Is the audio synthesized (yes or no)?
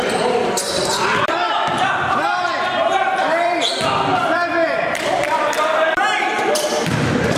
yes